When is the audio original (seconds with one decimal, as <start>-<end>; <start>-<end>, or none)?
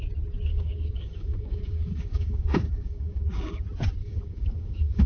0.0-0.5; 3.6-4.0